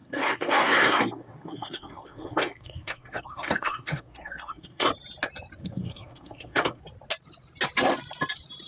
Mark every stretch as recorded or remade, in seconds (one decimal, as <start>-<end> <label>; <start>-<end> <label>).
0.0-4.9 remade; 4.9-5.6 recorded; 5.6-6.8 remade; 6.8-8.7 recorded